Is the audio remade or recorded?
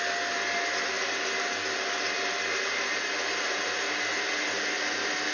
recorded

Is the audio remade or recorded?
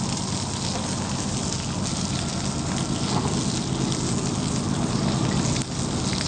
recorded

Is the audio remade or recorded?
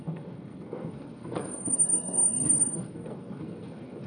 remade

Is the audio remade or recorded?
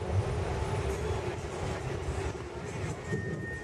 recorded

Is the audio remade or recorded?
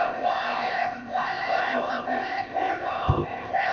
remade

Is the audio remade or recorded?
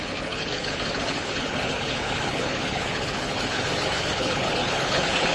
remade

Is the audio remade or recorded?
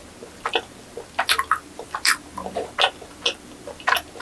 recorded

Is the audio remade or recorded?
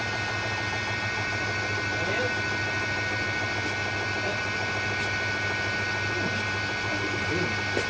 recorded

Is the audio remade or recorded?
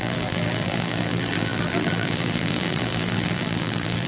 remade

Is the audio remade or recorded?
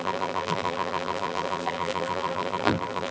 remade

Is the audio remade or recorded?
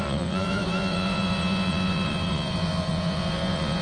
remade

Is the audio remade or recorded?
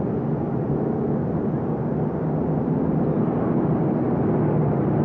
recorded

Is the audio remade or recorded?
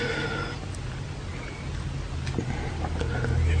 recorded